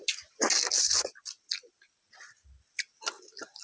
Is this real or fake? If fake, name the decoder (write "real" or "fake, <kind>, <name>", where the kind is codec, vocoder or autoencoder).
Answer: real